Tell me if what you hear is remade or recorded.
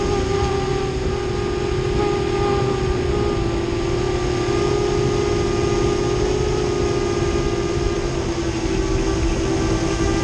recorded